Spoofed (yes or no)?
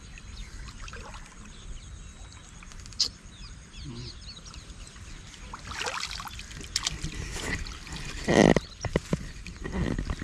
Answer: no